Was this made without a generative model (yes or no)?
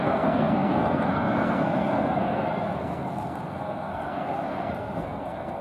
no